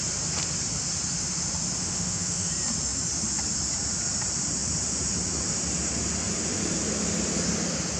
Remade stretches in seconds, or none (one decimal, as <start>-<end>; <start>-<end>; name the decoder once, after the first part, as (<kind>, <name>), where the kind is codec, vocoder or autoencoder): 1.8-2.5 (autoencoder, DAC-VAE)